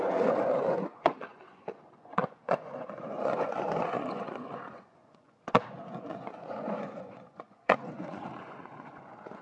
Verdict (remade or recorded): remade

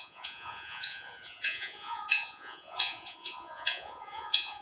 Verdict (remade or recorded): remade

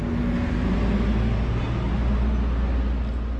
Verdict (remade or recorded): recorded